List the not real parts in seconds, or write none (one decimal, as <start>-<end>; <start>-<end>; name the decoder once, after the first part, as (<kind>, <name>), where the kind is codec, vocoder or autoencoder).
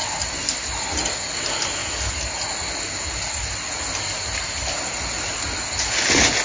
none